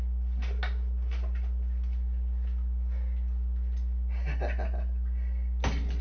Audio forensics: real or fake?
real